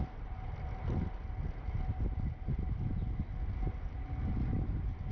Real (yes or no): yes